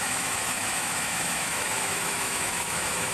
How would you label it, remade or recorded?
remade